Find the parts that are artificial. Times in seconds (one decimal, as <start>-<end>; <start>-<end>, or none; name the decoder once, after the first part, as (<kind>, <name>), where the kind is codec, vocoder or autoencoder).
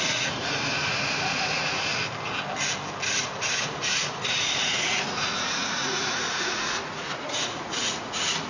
0.0-1.9 (vocoder, Vocos); 3.6-8.5